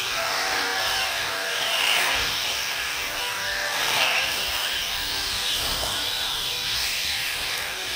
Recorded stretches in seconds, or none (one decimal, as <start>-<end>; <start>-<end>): none